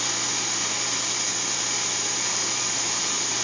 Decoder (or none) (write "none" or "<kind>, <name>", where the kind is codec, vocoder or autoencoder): none